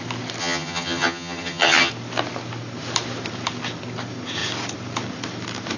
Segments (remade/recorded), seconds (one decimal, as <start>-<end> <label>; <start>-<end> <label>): 0.0-0.4 recorded; 0.4-1.9 remade; 1.9-5.8 recorded